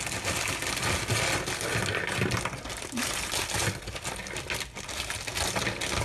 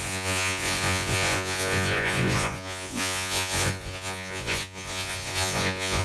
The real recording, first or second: first